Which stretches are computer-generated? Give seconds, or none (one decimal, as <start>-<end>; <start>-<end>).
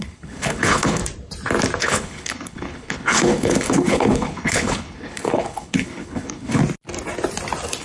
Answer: 0.0-1.0; 1.8-6.6